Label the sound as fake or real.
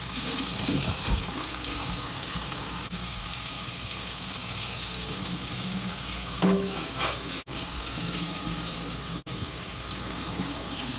fake